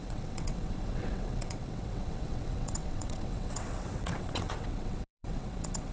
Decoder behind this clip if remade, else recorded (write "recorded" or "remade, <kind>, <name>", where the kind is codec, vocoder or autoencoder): remade, vocoder, WaveNeXt